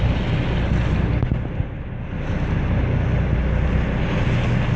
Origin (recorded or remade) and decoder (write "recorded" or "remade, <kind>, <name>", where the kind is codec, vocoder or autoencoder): recorded